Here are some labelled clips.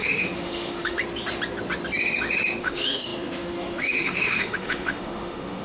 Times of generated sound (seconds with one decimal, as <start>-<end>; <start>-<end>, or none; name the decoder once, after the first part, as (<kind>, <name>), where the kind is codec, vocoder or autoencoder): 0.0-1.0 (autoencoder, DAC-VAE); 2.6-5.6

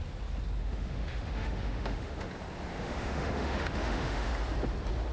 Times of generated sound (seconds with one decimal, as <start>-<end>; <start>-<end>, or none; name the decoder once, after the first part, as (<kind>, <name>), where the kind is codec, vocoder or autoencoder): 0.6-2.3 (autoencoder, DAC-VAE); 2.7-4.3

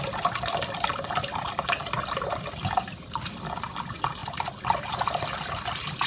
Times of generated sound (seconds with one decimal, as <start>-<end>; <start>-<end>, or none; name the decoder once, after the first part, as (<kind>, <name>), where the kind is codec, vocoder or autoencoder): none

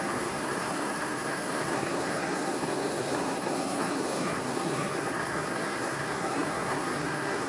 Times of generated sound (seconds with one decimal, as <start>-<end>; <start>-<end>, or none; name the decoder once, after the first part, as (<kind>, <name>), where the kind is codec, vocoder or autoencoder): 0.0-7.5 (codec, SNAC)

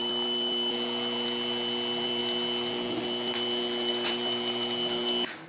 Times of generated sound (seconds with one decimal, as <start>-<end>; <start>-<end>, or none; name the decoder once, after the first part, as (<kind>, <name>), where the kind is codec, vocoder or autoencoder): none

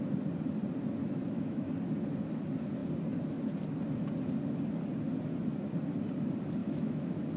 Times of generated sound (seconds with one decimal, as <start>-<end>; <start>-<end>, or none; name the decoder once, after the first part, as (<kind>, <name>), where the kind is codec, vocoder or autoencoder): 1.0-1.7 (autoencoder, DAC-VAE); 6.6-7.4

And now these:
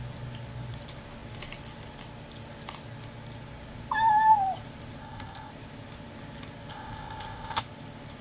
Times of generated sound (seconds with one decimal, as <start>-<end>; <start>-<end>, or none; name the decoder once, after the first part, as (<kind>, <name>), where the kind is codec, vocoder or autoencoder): 5.0-5.5 (codec, ZipCodec); 6.7-7.6